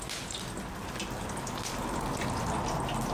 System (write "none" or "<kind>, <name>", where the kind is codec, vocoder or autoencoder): none